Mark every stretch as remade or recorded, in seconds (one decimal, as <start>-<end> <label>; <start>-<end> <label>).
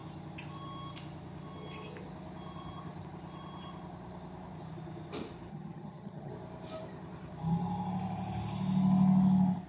0.0-5.5 recorded; 5.5-6.3 remade; 6.3-9.7 recorded